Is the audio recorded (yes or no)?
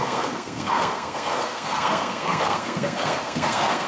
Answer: no